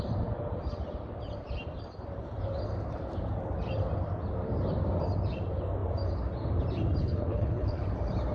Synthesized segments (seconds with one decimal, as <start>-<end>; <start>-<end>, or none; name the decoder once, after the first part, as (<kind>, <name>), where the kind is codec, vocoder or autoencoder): 7.0-7.8 (codec, HILCodec)